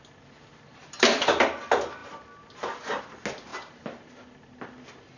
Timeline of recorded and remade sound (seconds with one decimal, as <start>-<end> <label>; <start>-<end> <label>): 0.0-0.8 recorded; 0.8-1.6 remade; 1.6-3.5 recorded; 3.5-4.1 remade; 4.1-5.2 recorded